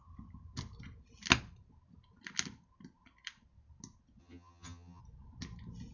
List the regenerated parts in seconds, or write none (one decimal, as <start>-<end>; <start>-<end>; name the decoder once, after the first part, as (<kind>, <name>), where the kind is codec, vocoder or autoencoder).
4.2-5.0 (vocoder, HiFi-GAN)